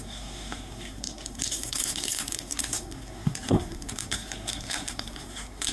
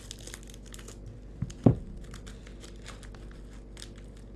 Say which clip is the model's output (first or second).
first